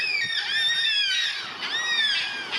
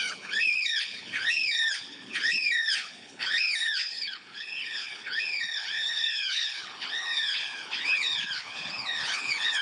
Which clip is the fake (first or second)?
second